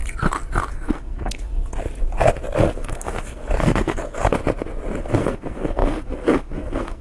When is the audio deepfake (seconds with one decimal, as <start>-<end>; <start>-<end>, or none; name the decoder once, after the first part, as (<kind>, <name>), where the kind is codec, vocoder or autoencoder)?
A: 0.7-1.5 (codec, SNAC); 2.6-4.4; 5.0-7.0